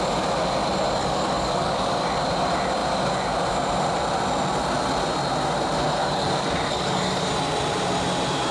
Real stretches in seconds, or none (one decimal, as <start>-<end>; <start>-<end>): 0.0-1.0; 2.1-6.0; 7.3-8.5